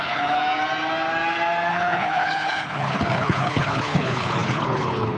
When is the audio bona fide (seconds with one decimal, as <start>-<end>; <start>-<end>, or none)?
0.4-1.7